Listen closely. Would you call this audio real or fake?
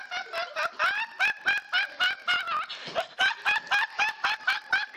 real